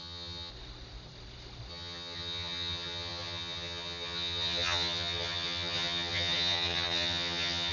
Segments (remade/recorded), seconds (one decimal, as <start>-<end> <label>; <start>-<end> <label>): 0.0-0.5 remade; 0.5-1.7 recorded; 1.7-7.7 remade